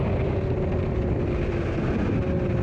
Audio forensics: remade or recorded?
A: recorded